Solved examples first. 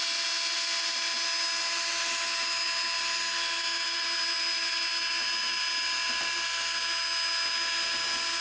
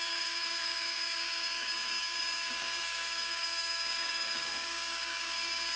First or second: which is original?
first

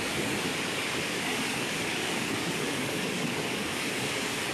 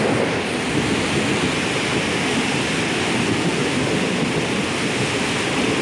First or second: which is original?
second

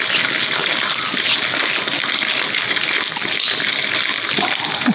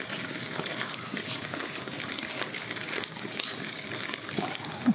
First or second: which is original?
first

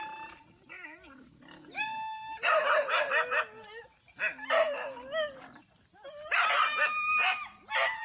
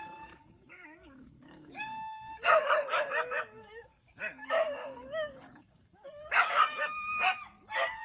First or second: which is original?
first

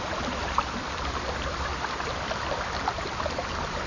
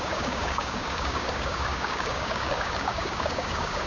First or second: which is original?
first